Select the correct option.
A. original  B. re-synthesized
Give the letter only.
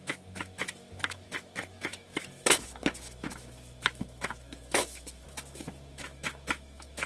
B